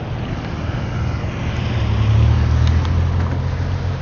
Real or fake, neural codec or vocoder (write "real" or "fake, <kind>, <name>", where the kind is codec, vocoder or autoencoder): real